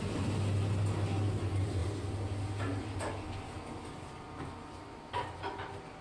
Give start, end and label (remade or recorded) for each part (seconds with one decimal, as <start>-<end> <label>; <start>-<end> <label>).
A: 0.0-6.0 recorded